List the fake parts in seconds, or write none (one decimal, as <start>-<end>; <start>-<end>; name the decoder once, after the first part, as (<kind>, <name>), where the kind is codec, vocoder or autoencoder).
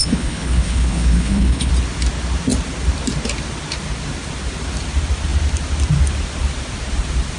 0.0-1.7 (codec, HILCodec)